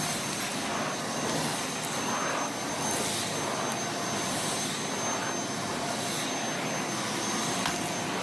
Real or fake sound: real